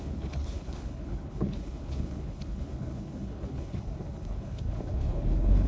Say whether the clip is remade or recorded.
remade